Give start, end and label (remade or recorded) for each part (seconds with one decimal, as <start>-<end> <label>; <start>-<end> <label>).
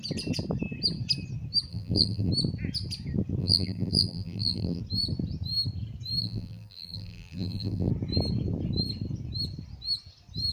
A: 0.0-1.7 recorded; 1.7-2.3 remade; 2.3-3.4 recorded; 3.4-4.8 remade; 4.8-6.2 recorded; 6.2-7.9 remade; 7.9-10.5 recorded